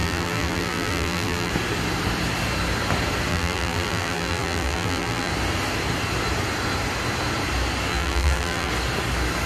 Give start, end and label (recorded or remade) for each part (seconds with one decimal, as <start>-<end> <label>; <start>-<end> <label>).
0.0-1.5 remade; 1.5-3.3 recorded; 3.3-5.3 remade; 5.3-7.9 recorded; 7.9-8.7 remade; 8.7-9.5 recorded